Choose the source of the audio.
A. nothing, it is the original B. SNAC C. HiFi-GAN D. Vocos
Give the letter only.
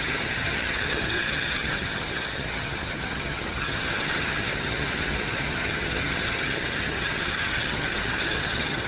C